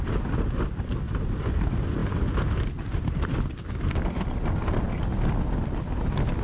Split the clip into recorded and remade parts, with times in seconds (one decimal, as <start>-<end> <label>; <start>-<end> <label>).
0.0-6.4 recorded